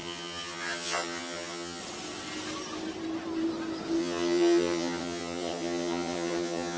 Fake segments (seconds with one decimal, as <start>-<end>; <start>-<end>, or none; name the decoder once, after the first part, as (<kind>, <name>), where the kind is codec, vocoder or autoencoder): 0.0-1.8 (vocoder, HiFi-GAN); 4.0-6.8